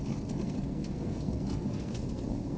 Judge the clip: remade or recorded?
remade